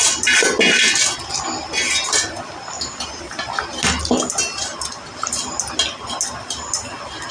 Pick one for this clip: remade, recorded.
recorded